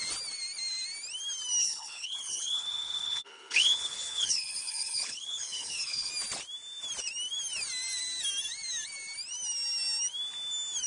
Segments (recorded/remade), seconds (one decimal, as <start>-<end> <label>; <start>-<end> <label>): 0.0-1.6 recorded; 1.6-6.1 remade; 6.1-10.9 recorded